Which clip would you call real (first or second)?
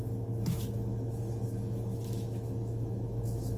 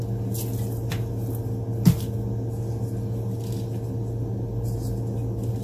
second